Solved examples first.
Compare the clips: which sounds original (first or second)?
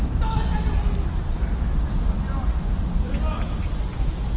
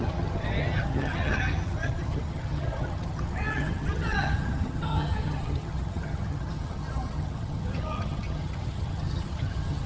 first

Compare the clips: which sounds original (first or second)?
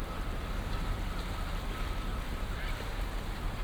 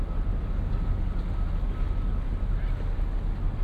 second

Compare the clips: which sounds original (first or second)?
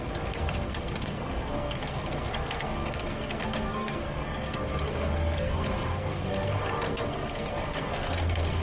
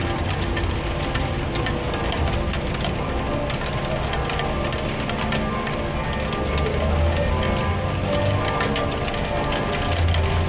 second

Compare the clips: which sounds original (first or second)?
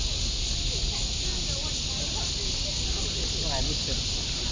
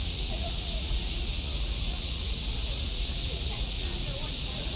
first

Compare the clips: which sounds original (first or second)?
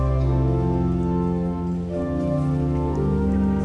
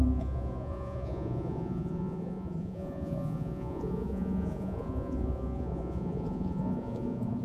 first